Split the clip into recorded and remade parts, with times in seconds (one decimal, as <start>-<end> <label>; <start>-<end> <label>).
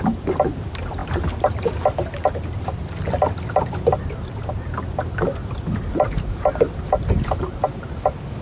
0.0-8.4 recorded